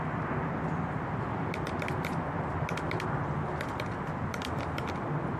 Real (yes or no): yes